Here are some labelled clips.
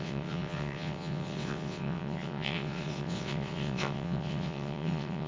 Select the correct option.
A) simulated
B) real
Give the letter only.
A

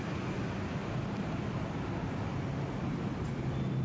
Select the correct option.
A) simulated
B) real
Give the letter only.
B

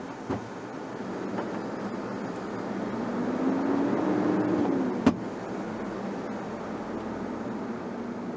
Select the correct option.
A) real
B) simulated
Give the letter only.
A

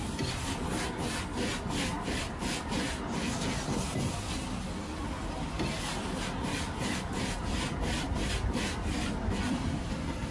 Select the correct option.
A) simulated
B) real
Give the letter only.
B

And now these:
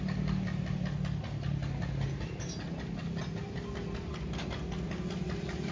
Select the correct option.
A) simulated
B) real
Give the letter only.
B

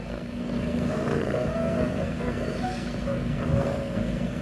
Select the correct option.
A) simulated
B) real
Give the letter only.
A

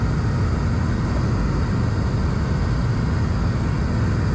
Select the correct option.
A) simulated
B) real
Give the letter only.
B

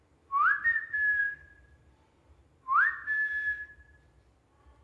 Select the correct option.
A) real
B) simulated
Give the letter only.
A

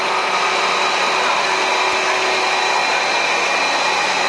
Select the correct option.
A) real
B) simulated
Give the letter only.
A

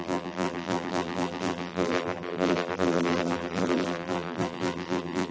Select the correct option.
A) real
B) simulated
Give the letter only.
B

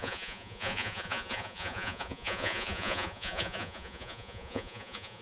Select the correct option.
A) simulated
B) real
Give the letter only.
A